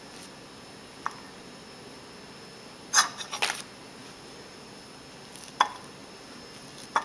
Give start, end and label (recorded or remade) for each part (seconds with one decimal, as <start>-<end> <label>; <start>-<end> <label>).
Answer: 0.0-4.0 recorded; 4.0-4.9 remade; 4.9-6.0 recorded; 6.0-7.0 remade